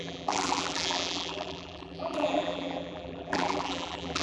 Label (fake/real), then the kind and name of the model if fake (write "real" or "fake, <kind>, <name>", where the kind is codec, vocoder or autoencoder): fake, vocoder, BigVGAN v2